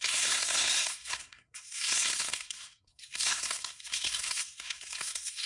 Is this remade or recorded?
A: remade